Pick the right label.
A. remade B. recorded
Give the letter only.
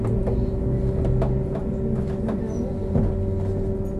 B